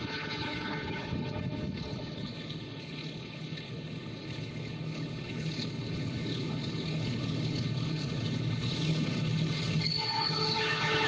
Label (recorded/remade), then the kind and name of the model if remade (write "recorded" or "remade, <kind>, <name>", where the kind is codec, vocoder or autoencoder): remade, codec, HILCodec